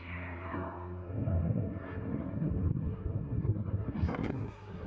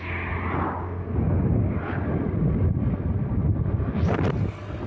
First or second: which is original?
second